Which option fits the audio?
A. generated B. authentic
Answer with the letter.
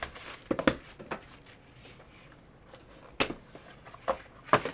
B